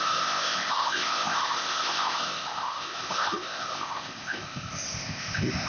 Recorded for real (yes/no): no